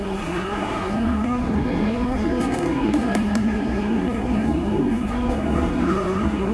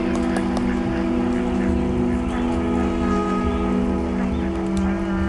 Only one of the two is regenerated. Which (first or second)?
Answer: first